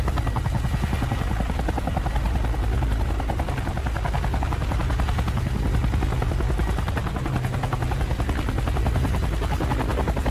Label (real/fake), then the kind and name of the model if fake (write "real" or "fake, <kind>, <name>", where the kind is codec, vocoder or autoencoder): real